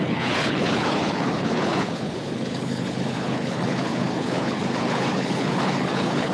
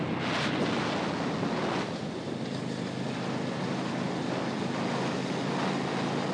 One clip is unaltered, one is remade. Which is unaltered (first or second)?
second